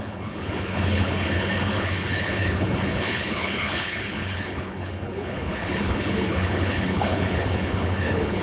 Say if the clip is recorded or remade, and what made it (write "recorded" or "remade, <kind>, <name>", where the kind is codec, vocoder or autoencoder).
remade, codec, HILCodec